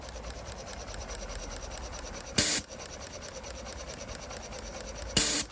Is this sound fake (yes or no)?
no